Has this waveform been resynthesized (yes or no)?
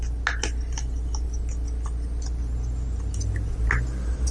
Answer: no